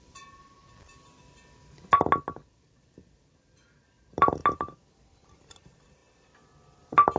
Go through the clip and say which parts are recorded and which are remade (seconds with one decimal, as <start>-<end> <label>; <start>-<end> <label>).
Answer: 0.0-0.6 remade; 0.6-2.4 recorded; 2.4-4.4 remade; 4.4-5.2 recorded; 5.2-6.0 remade; 6.0-7.2 recorded